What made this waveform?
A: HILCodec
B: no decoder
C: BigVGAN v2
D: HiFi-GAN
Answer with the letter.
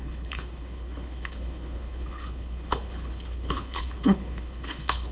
A